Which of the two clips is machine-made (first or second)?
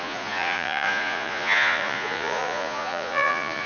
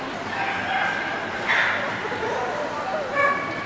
first